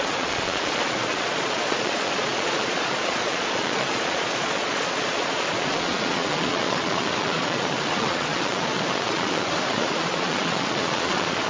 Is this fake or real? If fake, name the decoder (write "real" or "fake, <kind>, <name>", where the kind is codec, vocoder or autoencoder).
fake, vocoder, Vocos